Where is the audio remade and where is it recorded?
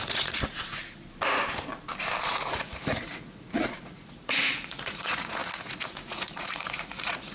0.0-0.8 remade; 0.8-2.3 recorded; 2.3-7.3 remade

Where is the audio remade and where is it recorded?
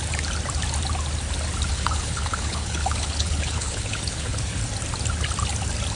0.0-1.7 recorded; 1.7-4.6 remade; 4.6-6.0 recorded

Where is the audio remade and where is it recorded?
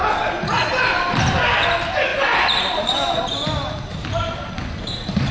0.0-2.1 recorded; 2.1-4.5 remade; 4.5-5.3 recorded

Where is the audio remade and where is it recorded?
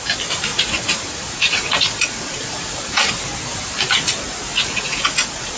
0.0-0.5 recorded; 0.5-3.1 remade; 3.1-4.5 recorded; 4.5-5.6 remade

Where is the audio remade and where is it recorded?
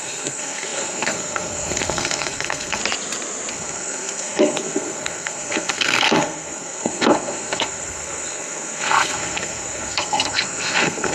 0.0-2.8 remade; 2.8-3.5 recorded; 3.5-11.1 remade